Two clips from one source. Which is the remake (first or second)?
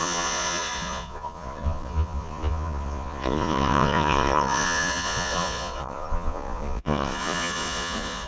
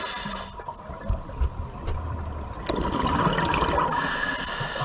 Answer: first